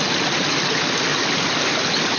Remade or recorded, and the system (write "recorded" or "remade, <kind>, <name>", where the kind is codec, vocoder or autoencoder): recorded